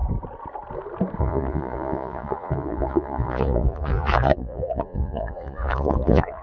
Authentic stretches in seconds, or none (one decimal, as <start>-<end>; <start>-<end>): 0.0-1.2